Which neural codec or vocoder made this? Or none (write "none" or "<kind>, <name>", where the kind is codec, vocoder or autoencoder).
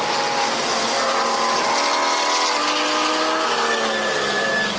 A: none